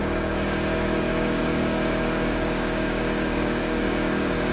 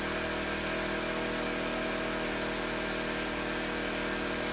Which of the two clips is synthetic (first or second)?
first